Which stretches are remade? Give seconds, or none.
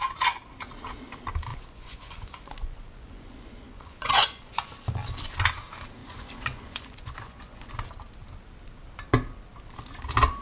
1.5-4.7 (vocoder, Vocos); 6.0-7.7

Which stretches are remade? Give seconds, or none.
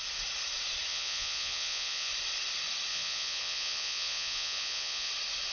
0.9-2.1 (vocoder, Vocos); 2.9-5.1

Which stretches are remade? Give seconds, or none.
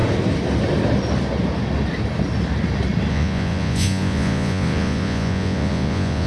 3.1-6.3 (vocoder, Vocos)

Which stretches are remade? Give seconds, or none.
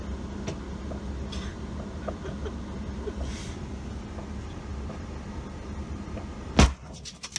none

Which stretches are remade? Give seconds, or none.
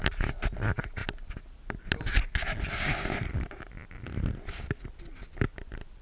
none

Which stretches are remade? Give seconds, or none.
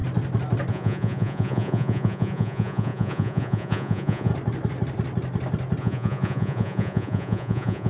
0.7-4.3 (vocoder, Vocos); 5.8-7.9